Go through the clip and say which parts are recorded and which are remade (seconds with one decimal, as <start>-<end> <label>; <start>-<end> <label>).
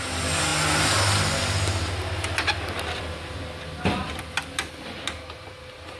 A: 0.0-6.0 recorded